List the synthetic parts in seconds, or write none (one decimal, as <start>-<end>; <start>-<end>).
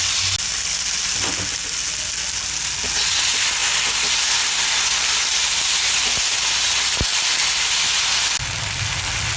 none